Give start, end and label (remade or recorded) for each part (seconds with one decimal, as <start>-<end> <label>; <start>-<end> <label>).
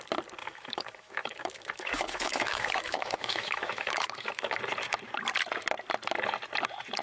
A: 0.0-0.4 recorded; 0.4-4.6 remade; 4.6-7.0 recorded